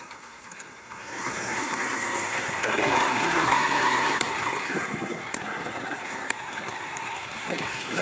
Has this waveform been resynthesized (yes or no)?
yes